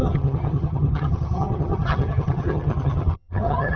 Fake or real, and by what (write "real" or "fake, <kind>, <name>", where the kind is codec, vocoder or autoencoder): fake, vocoder, HiFi-GAN